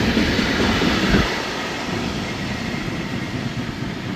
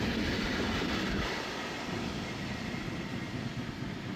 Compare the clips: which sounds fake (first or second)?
first